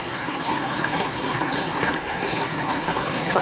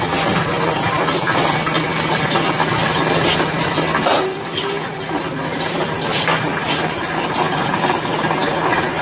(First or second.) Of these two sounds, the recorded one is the second